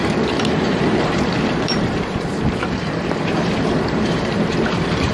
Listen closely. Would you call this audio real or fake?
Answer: fake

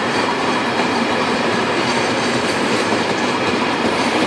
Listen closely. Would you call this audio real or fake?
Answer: fake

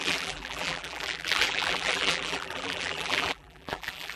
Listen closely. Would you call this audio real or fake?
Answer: fake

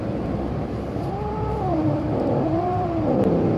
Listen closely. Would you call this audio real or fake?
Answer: fake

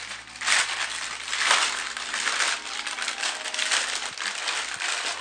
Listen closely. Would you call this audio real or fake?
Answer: real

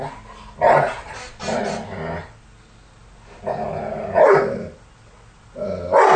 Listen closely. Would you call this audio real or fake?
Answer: real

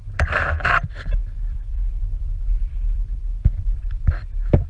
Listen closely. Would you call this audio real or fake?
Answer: fake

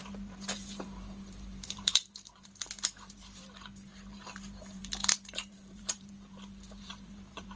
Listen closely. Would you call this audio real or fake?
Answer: fake